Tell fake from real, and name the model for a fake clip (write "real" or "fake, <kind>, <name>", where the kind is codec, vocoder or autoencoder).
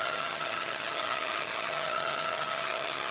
fake, vocoder, HiFi-GAN